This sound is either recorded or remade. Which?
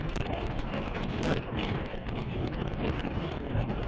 remade